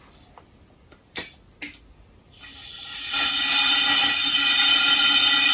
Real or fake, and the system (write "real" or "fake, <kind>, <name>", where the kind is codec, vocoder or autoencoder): real